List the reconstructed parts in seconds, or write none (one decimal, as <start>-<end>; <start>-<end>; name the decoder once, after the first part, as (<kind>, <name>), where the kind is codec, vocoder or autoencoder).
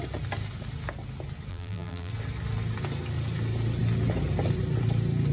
1.5-2.1 (vocoder, BigVGAN v2)